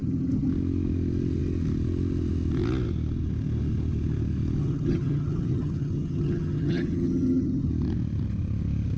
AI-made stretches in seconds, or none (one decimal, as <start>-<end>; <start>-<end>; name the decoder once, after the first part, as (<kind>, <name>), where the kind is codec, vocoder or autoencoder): 0.0-0.5 (vocoder, HiFi-GAN); 4.6-7.7